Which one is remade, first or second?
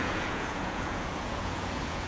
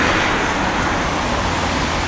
first